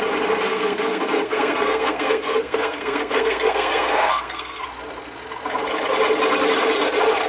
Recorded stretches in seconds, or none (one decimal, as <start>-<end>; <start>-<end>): 0.0-0.5; 4.6-7.3